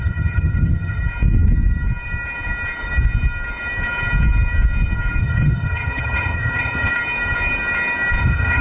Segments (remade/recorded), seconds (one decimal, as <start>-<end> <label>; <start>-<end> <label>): 0.0-1.0 remade; 1.0-5.2 recorded; 5.2-6.9 remade; 6.9-8.2 recorded; 8.2-8.6 remade